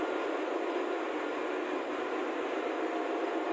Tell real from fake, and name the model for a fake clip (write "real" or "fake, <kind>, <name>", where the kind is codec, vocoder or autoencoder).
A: real